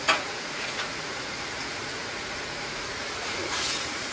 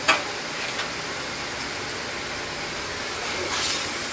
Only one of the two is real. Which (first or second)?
second